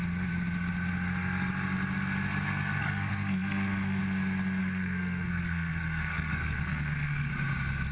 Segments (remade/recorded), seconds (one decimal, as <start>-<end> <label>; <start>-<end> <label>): 0.0-2.8 recorded; 2.8-4.0 remade; 4.0-4.6 recorded; 4.6-7.3 remade; 7.3-7.9 recorded